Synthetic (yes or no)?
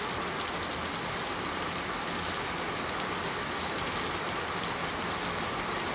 no